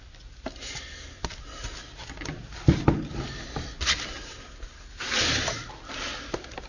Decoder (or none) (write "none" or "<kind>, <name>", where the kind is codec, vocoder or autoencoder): none